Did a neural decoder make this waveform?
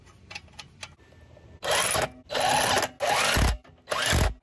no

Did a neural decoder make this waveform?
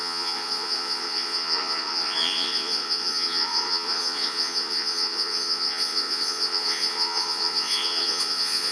yes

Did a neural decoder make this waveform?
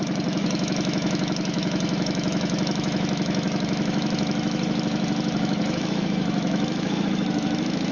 yes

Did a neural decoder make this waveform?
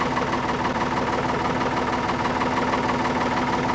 no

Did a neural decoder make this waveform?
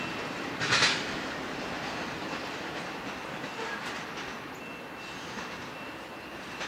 no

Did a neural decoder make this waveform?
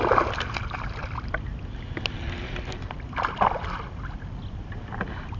yes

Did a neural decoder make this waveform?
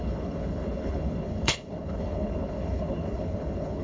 yes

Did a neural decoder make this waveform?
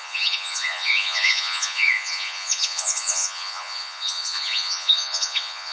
yes